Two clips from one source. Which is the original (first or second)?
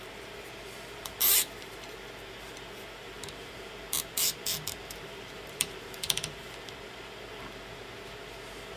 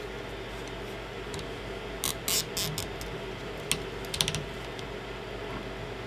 second